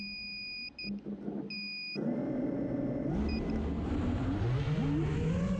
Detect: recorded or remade recorded